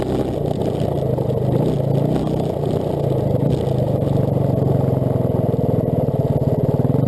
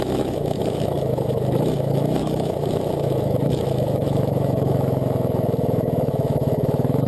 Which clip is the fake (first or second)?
second